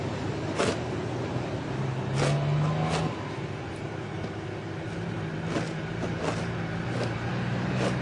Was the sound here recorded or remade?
recorded